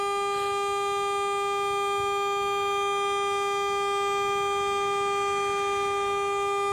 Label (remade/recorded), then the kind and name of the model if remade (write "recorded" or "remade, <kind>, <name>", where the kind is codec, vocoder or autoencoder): recorded